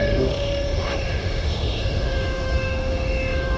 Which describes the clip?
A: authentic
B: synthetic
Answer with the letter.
B